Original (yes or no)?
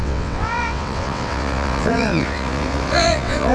no